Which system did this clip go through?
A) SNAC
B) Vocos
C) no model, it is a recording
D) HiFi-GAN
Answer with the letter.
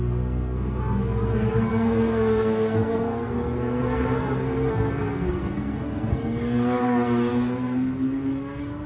A